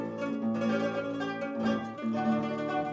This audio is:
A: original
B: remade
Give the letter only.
A